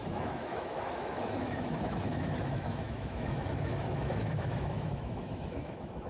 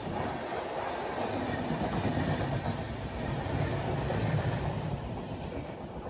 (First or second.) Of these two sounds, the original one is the second